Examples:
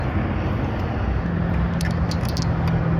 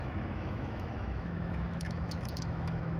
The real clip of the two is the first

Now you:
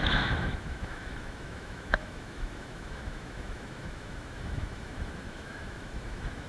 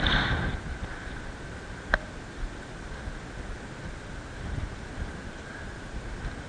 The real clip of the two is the second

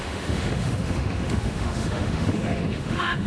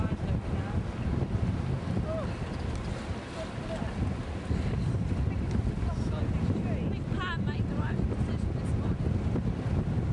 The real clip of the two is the second